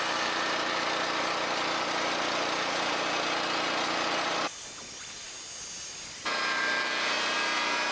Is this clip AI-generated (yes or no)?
no